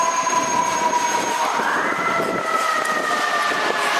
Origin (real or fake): real